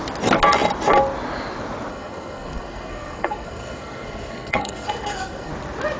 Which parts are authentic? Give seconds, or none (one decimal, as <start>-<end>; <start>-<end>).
0.0-1.9; 5.5-6.0

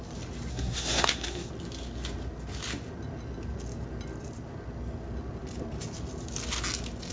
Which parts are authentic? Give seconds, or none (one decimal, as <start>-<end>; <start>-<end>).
0.0-0.5; 1.5-7.1